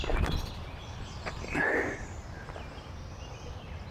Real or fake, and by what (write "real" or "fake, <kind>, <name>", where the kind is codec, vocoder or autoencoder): real